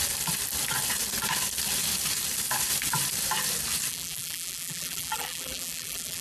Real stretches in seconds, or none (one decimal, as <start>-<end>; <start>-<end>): 0.0-3.9